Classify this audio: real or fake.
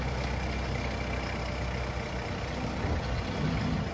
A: real